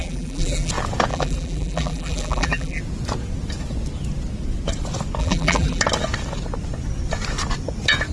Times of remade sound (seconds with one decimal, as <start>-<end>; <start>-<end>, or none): 0.0-0.7; 1.1-2.8; 5.2-5.8